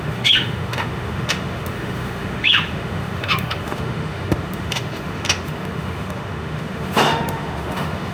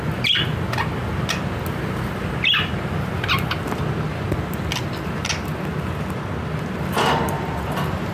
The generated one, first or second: first